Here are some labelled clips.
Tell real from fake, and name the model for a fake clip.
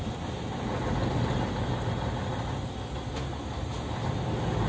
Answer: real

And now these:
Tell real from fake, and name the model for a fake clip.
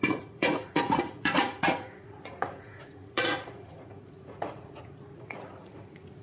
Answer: fake, vocoder, Vocos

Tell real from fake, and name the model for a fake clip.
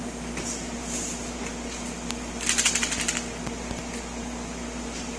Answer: real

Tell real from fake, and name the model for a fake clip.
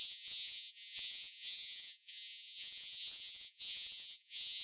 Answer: fake, vocoder, Vocos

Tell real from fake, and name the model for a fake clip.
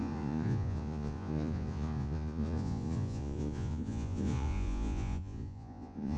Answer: fake, vocoder, Vocos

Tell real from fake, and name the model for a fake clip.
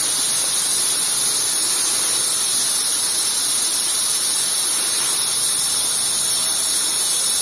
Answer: real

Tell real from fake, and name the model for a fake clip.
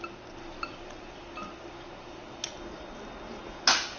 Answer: real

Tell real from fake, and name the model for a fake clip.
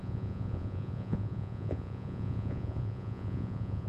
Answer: fake, vocoder, Vocos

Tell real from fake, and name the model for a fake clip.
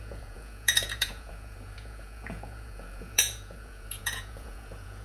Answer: fake, vocoder, Vocos